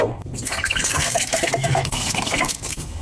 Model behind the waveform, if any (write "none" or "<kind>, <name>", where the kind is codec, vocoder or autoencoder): codec, SNAC